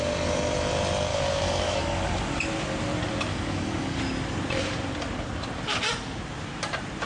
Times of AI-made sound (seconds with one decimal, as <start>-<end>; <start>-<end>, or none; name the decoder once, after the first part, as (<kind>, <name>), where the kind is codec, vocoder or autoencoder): 1.1-2.2 (codec, DAC); 3.3-4.0

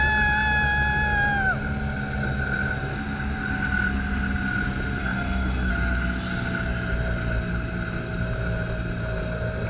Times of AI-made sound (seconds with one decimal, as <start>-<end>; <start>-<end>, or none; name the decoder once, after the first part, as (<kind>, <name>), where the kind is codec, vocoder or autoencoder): 5.0-5.7 (codec, DAC)

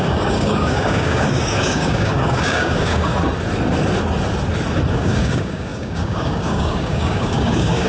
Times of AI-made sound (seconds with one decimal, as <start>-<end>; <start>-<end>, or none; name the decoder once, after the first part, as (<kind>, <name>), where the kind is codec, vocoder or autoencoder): 0.0-3.1 (codec, DAC); 4.9-7.9

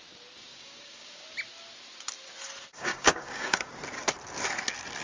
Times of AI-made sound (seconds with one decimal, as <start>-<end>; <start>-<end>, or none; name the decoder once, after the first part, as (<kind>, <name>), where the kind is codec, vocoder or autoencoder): 0.5-1.2 (codec, DAC); 2.7-3.7

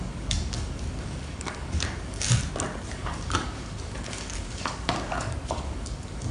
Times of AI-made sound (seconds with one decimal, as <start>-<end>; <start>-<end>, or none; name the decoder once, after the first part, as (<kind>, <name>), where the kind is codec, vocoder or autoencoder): 0.0-2.4 (codec, DAC); 2.9-6.3